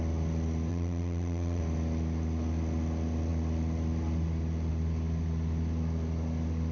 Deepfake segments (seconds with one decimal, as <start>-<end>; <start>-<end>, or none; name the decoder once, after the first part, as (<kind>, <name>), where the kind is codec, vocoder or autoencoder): 0.7-1.6 (vocoder, Vocos)